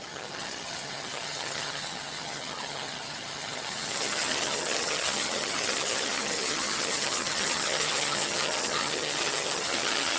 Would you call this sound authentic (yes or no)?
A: no